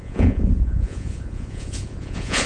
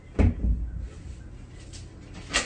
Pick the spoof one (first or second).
first